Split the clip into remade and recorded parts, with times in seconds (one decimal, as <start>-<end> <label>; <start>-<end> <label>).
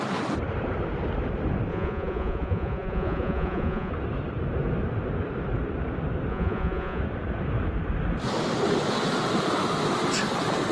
0.0-1.7 recorded; 1.7-3.9 remade; 3.9-6.3 recorded; 6.3-7.0 remade; 7.0-10.7 recorded